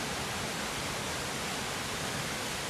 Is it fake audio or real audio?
real